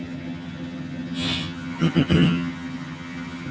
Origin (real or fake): fake